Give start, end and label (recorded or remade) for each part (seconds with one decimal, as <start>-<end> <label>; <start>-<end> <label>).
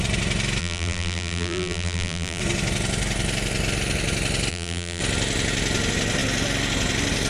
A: 0.0-0.6 recorded; 0.6-2.4 remade; 2.4-4.5 recorded; 4.5-5.0 remade; 5.0-7.3 recorded